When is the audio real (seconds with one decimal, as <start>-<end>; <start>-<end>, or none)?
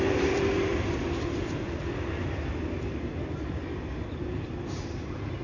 0.7-3.9